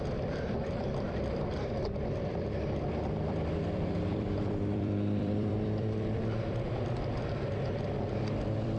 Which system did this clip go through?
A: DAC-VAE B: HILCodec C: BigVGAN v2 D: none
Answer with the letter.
C